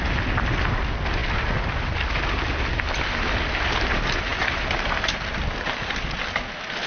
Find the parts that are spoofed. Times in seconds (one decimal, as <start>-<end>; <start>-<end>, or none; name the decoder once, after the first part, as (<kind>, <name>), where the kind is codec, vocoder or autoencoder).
none